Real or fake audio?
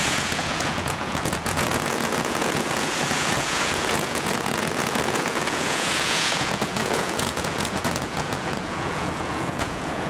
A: fake